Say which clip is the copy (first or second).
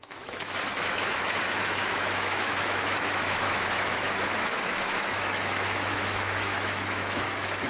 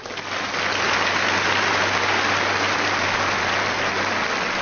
first